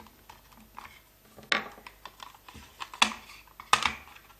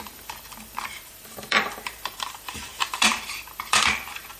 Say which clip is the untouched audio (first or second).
first